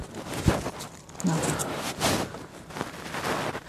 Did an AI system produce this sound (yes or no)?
no